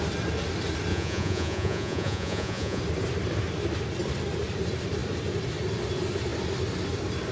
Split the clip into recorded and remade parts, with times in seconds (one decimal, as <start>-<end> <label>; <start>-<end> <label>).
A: 0.0-0.9 recorded; 0.9-2.8 remade; 2.8-7.3 recorded